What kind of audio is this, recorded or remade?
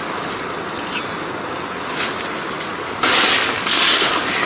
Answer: recorded